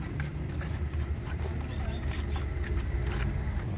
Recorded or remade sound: remade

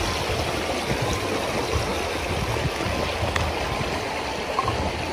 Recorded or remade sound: recorded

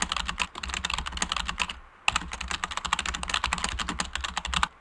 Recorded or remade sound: recorded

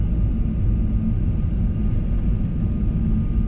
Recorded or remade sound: recorded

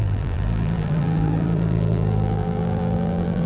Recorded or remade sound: remade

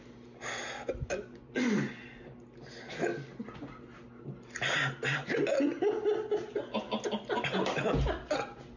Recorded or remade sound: recorded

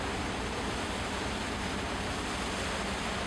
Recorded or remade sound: remade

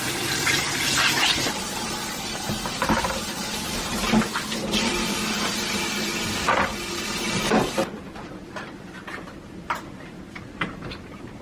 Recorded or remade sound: remade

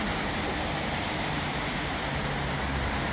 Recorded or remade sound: remade